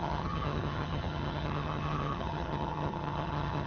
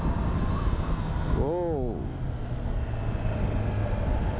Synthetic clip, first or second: first